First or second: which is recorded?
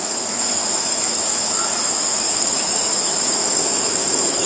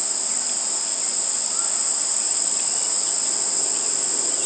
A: second